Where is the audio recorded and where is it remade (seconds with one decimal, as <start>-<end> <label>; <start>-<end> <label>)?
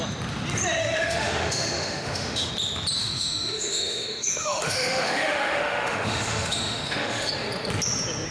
0.0-0.8 recorded; 0.8-2.5 remade; 2.5-3.0 recorded; 3.0-7.3 remade; 7.3-8.3 recorded